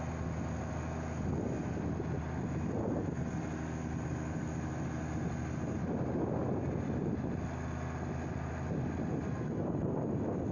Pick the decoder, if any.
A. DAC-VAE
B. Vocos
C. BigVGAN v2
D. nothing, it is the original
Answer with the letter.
D